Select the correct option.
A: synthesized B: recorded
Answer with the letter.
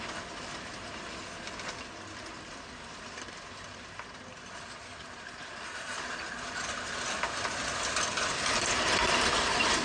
B